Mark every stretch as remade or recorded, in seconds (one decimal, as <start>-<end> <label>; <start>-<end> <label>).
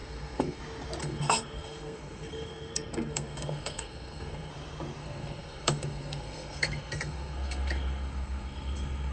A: 0.0-0.6 remade; 0.6-1.0 recorded; 1.0-4.5 remade; 4.5-5.0 recorded; 5.0-9.1 remade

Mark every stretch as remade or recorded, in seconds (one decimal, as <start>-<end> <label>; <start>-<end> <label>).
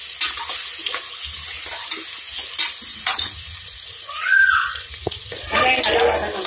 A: 0.0-2.9 recorded; 2.9-5.6 remade; 5.6-6.5 recorded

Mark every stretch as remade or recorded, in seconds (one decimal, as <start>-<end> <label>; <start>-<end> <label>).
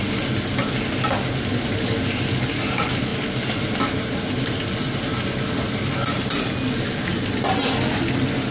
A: 0.0-8.5 recorded